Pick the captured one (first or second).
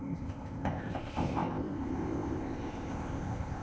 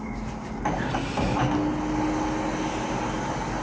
second